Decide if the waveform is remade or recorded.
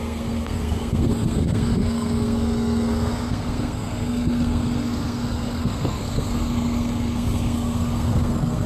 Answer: remade